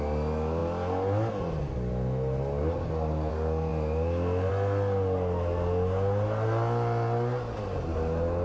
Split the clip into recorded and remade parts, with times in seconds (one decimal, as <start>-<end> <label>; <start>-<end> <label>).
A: 0.0-8.4 recorded